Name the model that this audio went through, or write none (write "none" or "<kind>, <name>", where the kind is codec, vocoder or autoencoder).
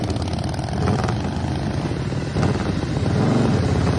none